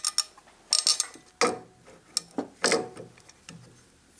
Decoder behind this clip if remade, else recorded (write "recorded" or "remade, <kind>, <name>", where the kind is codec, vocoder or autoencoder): recorded